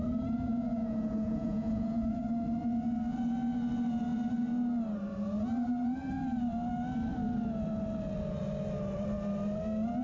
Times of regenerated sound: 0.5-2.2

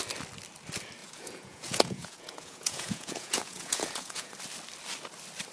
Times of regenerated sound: 1.0-4.3